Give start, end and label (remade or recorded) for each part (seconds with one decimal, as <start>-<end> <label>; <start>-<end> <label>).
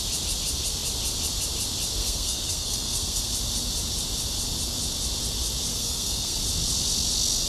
0.0-2.0 recorded; 2.0-3.3 remade; 3.3-5.7 recorded; 5.7-6.4 remade; 6.4-7.5 recorded